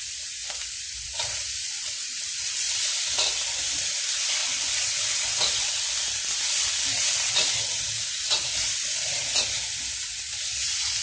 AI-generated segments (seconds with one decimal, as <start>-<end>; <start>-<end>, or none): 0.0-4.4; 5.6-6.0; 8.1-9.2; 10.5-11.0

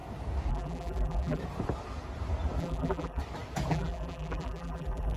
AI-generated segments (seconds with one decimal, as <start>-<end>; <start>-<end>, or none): 0.5-1.4; 2.6-3.2; 3.7-5.2

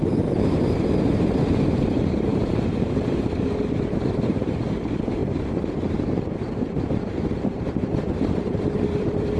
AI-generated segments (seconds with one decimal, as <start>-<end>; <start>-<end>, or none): 0.0-9.4